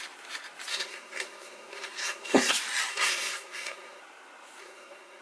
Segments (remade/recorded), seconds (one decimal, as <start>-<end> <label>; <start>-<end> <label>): 0.0-0.7 recorded; 0.7-2.5 remade; 2.5-2.9 recorded; 2.9-4.0 remade; 4.0-4.6 recorded; 4.6-5.2 remade